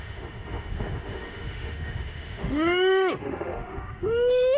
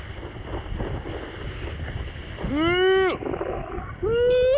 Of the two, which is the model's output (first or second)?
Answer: first